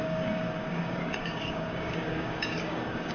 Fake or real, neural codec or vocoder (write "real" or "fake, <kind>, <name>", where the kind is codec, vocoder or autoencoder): fake, codec, DAC